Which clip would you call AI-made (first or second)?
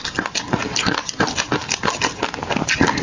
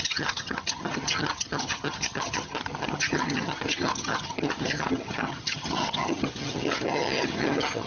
second